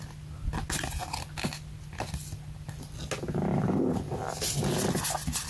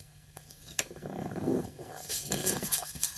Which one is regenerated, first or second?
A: second